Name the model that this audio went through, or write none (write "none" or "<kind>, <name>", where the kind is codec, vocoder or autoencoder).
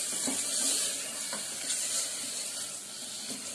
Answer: none